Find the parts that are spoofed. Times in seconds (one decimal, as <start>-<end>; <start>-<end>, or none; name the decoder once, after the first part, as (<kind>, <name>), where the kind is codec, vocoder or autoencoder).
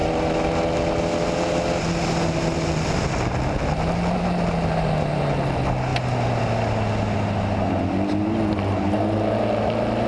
none